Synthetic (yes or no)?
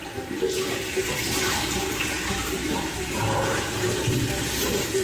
yes